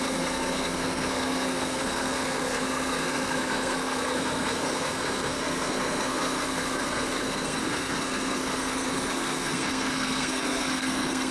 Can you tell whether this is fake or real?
fake